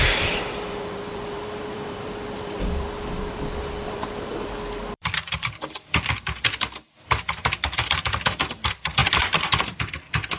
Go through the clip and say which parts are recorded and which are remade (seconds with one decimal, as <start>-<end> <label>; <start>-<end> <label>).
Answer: 0.0-10.4 remade